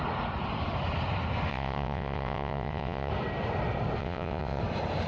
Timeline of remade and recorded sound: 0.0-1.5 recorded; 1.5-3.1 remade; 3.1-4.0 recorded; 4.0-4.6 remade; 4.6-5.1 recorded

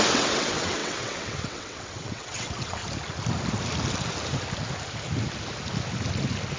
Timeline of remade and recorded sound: 0.0-2.8 remade; 2.8-6.6 recorded